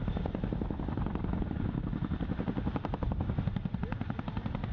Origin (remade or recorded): recorded